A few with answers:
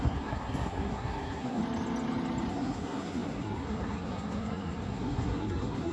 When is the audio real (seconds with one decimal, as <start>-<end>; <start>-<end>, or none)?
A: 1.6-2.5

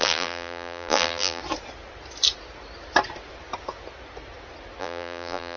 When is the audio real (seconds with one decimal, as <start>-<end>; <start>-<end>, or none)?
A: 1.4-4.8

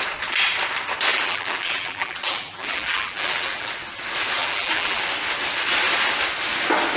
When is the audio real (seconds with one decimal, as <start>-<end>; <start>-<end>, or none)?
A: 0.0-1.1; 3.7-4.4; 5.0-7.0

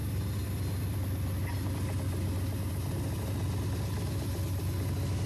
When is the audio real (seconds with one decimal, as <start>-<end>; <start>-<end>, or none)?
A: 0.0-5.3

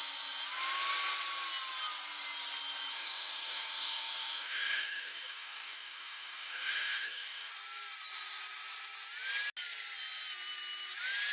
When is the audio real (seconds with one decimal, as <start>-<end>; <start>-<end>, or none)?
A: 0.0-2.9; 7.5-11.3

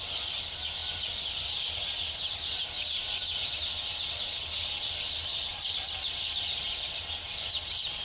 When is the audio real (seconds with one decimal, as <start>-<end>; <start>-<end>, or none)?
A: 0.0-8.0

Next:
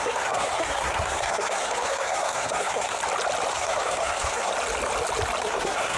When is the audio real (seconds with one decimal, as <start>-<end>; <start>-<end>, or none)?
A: 3.0-3.5; 4.5-5.4